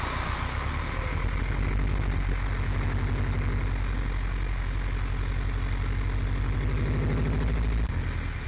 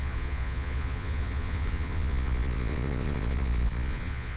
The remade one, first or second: second